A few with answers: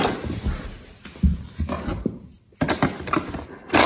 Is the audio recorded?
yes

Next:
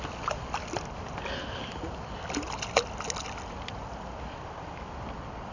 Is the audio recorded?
yes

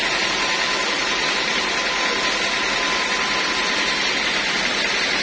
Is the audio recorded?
yes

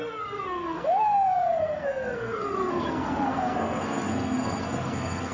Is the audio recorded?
no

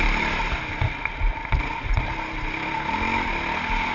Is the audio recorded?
yes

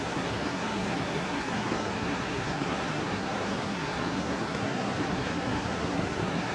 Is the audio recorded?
no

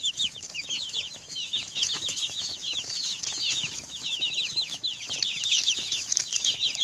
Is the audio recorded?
no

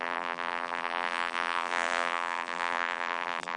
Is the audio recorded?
no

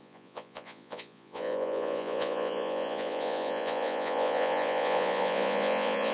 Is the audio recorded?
no